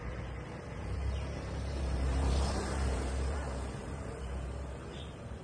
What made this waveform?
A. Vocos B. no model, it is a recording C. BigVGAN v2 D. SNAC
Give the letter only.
C